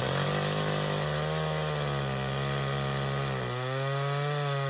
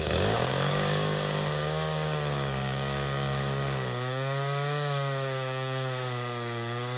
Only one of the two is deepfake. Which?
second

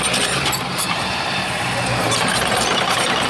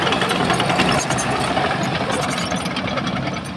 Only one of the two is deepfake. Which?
first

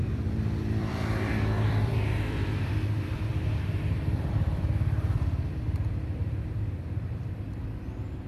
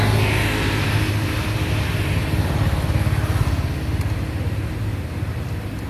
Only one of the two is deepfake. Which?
first